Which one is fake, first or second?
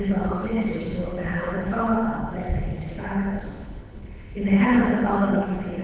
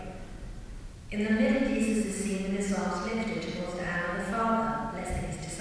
first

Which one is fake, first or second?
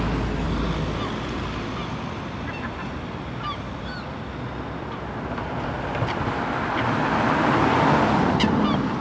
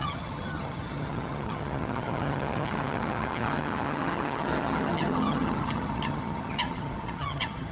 second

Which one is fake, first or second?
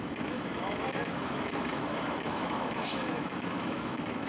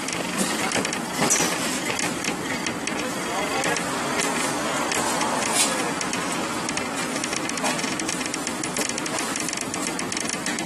first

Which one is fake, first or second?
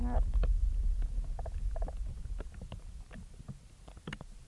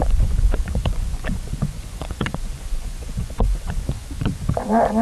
second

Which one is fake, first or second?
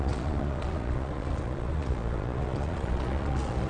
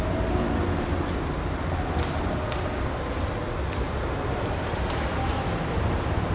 first